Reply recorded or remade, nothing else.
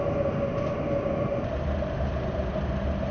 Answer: recorded